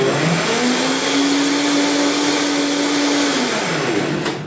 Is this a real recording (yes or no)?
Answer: yes